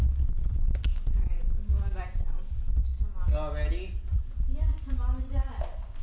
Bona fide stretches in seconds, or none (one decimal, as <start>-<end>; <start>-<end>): 0.0-6.0